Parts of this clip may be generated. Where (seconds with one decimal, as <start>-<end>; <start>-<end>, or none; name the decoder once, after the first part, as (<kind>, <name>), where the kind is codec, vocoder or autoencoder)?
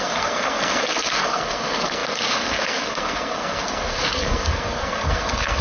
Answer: 0.0-5.6 (codec, SNAC)